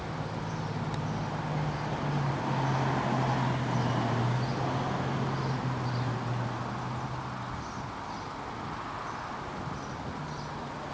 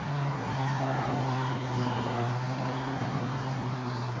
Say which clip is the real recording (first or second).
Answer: first